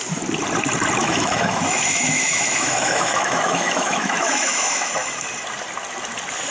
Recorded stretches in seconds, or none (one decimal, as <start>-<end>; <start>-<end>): 0.0-1.0; 4.9-6.5